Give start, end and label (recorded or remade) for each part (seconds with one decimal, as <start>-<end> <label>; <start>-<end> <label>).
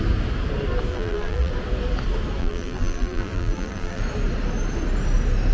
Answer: 0.0-0.9 recorded; 0.9-1.5 remade; 1.5-2.4 recorded; 2.4-4.0 remade; 4.0-5.5 recorded